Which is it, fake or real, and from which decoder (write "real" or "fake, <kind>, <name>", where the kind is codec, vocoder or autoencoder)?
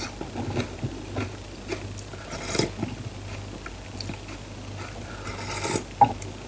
real